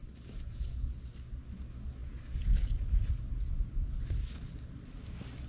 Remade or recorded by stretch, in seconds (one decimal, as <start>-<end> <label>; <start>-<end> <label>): 0.0-5.5 recorded